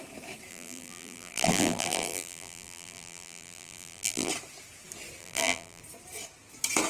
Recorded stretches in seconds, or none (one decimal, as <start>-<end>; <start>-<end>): 0.0-0.5; 4.3-5.2; 5.8-6.9